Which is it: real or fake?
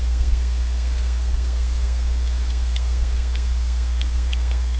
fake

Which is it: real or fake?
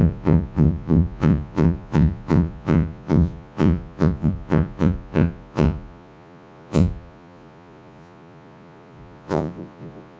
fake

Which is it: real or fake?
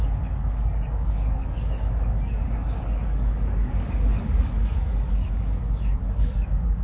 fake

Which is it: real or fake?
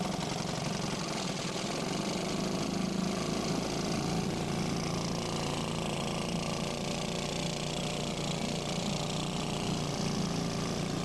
real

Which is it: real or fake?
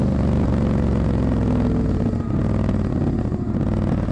real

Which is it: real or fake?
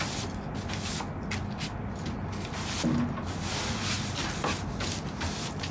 real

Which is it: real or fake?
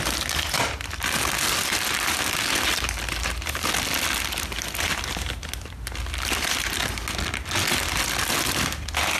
real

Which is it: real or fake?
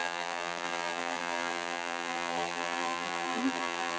fake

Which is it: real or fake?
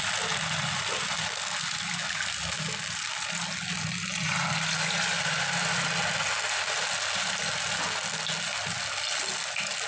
real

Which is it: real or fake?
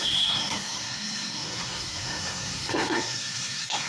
fake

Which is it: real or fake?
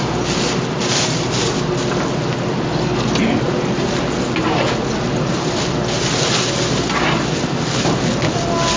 real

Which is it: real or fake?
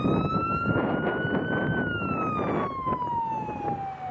real